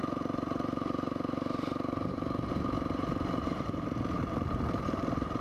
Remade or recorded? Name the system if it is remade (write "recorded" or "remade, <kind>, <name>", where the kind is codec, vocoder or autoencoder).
remade, vocoder, BigVGAN v2